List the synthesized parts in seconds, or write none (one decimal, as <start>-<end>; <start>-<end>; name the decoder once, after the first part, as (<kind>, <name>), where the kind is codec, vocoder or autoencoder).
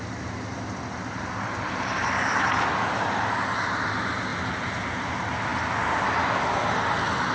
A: 4.3-5.1 (vocoder, BigVGAN v2)